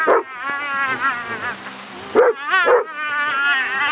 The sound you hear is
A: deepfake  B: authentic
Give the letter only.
B